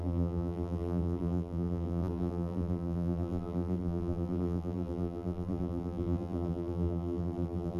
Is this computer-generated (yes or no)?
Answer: yes